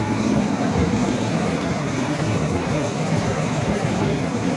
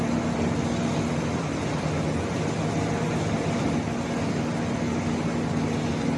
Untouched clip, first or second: second